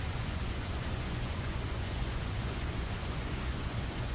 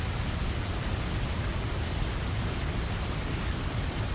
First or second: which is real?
second